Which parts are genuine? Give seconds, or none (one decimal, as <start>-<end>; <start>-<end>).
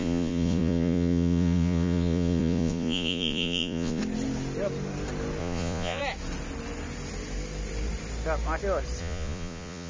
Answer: 4.0-5.4; 6.0-9.0